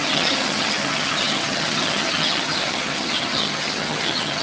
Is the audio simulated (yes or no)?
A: yes